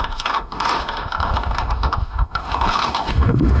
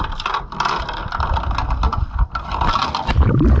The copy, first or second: first